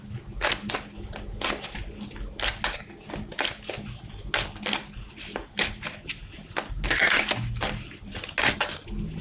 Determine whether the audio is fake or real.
real